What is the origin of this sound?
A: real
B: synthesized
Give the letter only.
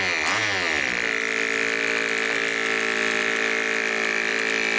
A